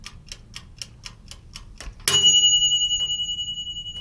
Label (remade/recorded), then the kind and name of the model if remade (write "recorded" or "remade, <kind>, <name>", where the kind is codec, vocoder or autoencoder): recorded